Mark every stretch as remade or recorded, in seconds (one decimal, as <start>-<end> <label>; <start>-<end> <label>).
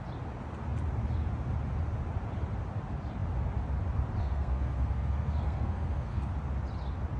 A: 0.0-4.2 recorded; 4.2-6.3 remade; 6.3-7.2 recorded